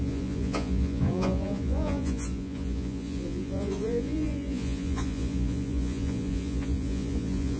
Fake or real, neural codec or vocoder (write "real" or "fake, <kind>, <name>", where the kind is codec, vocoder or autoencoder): fake, vocoder, Vocos